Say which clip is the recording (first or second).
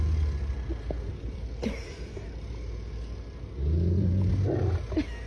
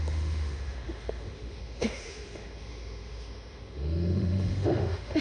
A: first